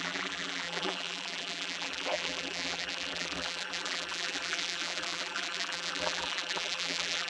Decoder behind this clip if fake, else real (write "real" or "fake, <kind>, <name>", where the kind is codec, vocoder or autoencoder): fake, vocoder, BigVGAN v2